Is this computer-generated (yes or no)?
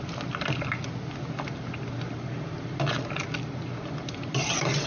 no